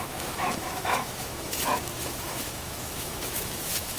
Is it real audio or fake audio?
fake